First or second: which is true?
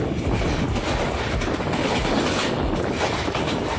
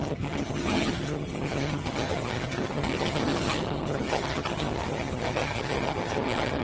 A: first